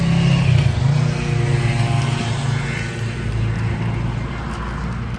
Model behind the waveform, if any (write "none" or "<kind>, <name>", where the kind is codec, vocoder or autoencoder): none